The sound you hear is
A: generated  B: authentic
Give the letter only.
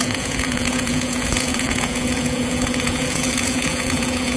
A